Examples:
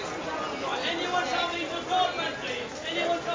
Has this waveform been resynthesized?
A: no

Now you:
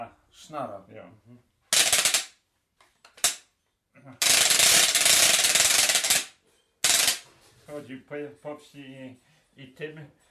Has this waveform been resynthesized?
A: no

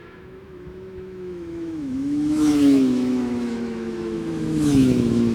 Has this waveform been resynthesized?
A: yes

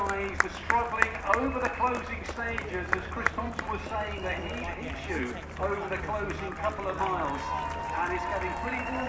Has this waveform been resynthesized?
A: no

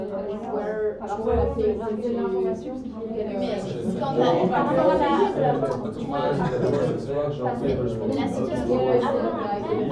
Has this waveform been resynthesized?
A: no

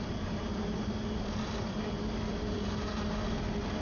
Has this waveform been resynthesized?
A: no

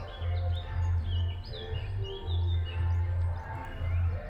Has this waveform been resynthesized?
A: no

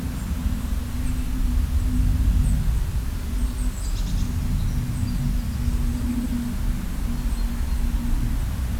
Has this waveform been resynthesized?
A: no